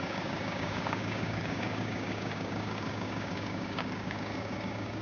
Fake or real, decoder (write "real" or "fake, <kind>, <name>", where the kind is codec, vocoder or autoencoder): fake, codec, DAC